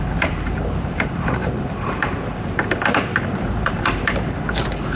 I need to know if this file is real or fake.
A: fake